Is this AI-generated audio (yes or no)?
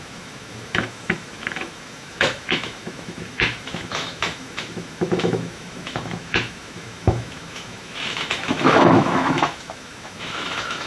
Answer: yes